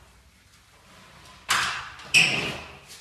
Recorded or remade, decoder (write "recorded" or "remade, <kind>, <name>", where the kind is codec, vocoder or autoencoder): recorded